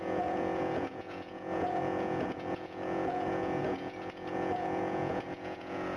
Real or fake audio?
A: fake